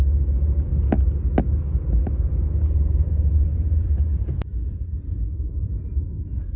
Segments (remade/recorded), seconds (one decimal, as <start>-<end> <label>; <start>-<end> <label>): 0.0-0.7 remade; 0.7-2.8 recorded; 2.8-6.6 remade